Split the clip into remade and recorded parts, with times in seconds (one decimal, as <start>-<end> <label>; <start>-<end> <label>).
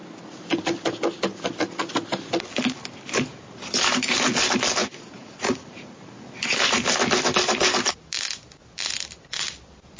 0.0-4.8 recorded; 4.8-6.2 remade; 6.2-10.0 recorded